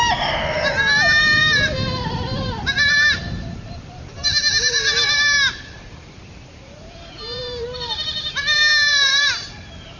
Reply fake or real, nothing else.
fake